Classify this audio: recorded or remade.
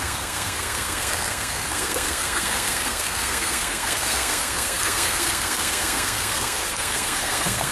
remade